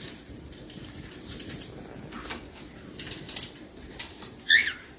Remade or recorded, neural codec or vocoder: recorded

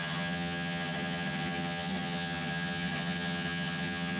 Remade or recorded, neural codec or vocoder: remade, vocoder, HiFi-GAN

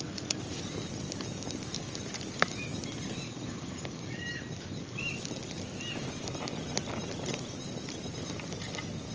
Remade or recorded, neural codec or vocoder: recorded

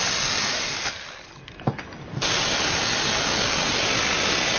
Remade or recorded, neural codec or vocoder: recorded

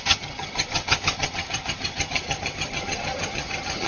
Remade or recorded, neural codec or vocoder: remade, vocoder, HiFi-GAN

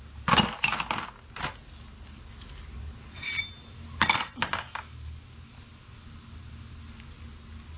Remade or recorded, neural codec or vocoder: recorded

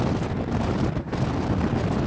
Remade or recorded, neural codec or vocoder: recorded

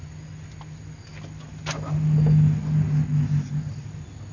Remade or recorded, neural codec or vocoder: recorded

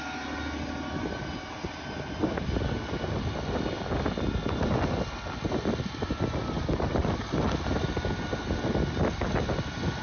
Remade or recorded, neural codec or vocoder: recorded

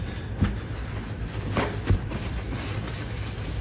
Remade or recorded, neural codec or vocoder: recorded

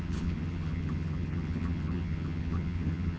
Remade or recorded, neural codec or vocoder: remade, vocoder, HiFi-GAN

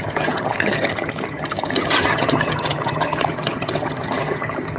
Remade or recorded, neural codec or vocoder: remade, vocoder, HiFi-GAN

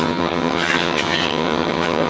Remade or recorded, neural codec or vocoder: remade, vocoder, HiFi-GAN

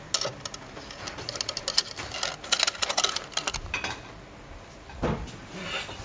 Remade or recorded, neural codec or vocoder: recorded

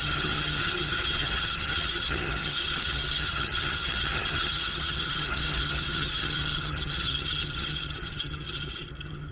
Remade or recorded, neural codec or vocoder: remade, vocoder, HiFi-GAN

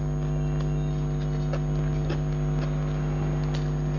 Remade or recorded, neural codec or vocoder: recorded